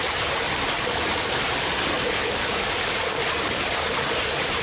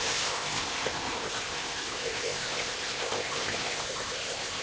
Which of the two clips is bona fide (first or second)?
first